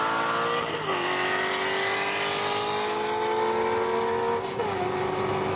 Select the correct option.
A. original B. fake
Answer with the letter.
A